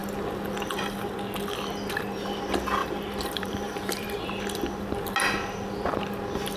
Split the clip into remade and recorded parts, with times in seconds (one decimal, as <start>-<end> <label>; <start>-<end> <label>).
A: 0.0-2.8 recorded; 2.8-4.4 remade; 4.4-6.6 recorded